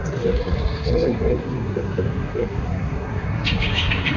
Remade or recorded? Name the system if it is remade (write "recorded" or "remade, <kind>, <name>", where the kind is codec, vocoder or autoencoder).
remade, codec, SNAC